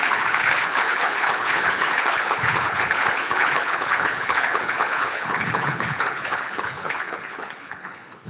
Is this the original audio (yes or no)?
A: no